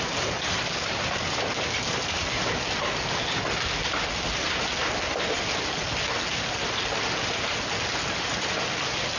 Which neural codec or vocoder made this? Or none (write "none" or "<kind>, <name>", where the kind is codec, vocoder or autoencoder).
none